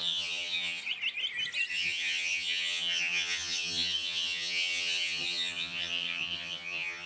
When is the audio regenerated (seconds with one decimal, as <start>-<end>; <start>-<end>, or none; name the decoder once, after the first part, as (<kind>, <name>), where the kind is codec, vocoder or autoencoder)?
0.0-0.8 (vocoder, HiFi-GAN); 1.7-7.1